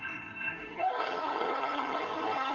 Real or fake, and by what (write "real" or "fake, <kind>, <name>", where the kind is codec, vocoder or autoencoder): fake, codec, SNAC